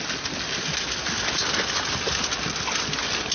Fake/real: real